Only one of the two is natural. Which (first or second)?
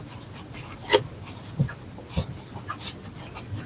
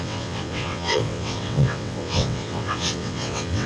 first